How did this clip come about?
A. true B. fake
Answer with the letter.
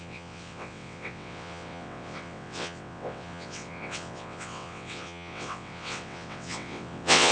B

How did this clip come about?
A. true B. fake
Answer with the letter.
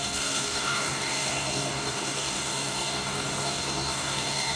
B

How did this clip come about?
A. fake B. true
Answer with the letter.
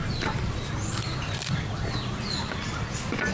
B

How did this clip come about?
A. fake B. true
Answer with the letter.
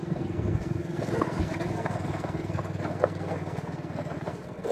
A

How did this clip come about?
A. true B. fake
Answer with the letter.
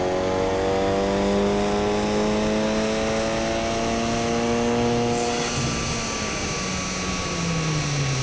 A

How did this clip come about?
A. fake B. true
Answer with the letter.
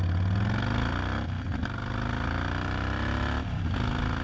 B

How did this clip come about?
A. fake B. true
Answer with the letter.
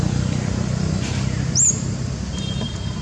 A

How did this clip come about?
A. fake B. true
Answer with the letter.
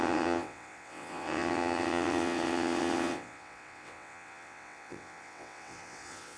A